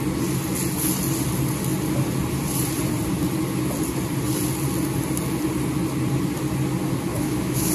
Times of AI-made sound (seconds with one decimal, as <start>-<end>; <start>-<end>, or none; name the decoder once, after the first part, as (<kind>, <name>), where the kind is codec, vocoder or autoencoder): 7.1-7.7 (autoencoder, DAC-VAE)